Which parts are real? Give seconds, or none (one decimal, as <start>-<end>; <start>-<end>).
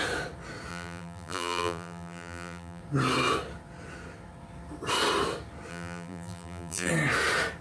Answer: 0.0-0.7; 2.8-5.7; 6.9-7.6